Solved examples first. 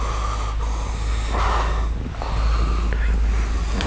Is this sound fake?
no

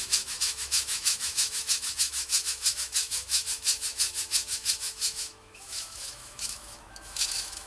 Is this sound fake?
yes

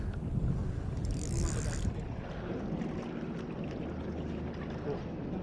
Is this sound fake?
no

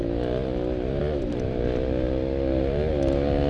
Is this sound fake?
no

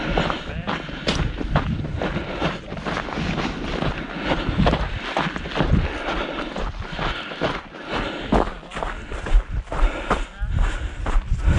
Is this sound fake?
no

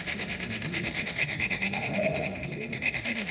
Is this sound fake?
yes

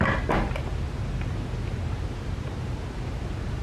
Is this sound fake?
no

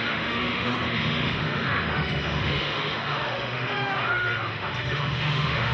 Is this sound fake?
yes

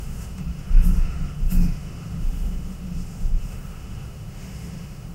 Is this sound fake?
yes